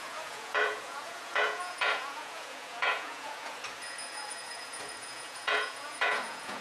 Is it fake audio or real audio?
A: fake